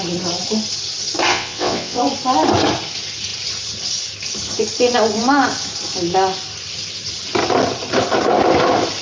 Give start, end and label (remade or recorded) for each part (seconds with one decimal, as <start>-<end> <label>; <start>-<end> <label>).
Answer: 0.0-1.3 recorded; 1.3-2.0 remade; 2.0-9.0 recorded

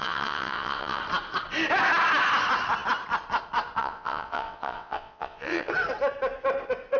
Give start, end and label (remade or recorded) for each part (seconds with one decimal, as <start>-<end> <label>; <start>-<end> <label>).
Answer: 0.0-1.0 remade; 1.0-3.8 recorded; 3.8-5.7 remade; 5.7-7.0 recorded